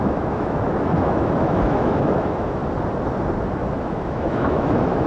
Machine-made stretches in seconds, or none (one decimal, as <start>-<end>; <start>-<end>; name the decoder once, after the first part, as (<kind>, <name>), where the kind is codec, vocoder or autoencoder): 0.0-2.6 (autoencoder, DAC-VAE); 3.8-5.1